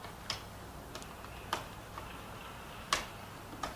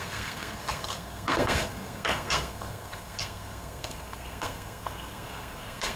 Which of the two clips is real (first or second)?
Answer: first